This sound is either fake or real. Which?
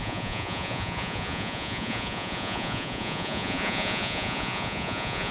fake